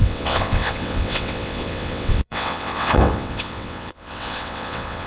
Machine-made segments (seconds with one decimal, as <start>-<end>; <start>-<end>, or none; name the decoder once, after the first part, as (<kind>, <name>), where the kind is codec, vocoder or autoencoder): 0.0-5.1 (vocoder, WaveNeXt)